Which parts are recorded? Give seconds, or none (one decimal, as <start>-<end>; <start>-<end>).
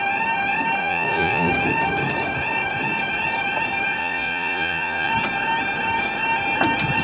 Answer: 0.0-0.8; 1.5-4.0; 5.1-7.0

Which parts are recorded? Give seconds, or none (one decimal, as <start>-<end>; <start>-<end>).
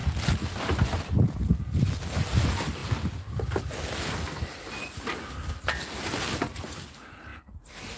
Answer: 0.0-8.0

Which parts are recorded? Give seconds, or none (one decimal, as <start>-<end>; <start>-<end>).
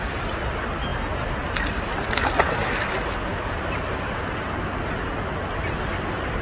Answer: 0.0-6.4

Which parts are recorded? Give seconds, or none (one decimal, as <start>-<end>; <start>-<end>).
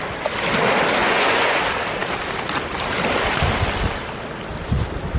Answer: 0.0-1.0; 1.6-5.2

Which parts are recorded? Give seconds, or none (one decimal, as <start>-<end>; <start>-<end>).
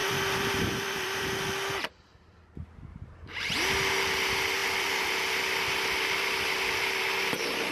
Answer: 1.3-2.1; 3.9-4.6; 7.0-7.7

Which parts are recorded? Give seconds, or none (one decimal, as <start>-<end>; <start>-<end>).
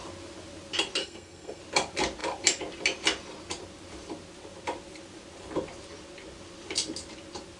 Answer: 0.0-1.0; 1.6-7.6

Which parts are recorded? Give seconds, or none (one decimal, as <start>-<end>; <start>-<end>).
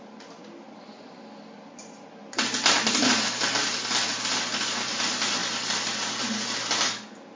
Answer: 0.0-7.4